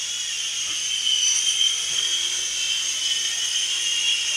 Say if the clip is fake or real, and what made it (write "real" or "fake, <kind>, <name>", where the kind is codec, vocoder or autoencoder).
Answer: fake, vocoder, BigVGAN v2